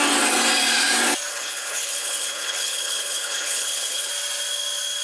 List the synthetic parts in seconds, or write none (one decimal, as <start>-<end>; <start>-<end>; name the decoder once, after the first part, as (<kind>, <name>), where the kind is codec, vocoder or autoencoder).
1.3-4.1 (codec, HILCodec)